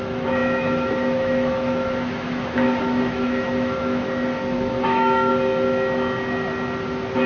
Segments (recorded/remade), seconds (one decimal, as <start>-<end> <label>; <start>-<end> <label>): 0.0-5.3 remade; 5.3-7.3 recorded